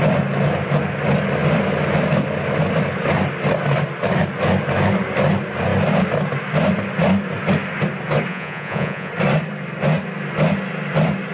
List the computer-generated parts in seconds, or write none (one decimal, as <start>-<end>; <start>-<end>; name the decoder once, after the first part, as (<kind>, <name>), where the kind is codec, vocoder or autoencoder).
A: 8.3-9.1 (vocoder, Vocos)